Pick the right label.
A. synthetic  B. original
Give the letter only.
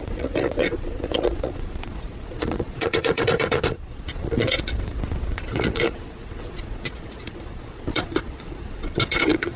A